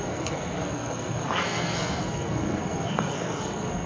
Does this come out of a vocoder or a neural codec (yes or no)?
yes